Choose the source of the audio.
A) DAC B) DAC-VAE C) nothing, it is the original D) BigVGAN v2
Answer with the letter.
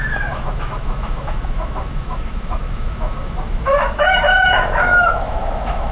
B